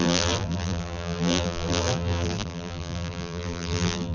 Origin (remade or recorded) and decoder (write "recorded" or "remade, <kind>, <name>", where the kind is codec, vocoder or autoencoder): remade, vocoder, BigVGAN v2